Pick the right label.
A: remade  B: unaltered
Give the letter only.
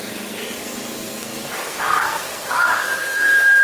A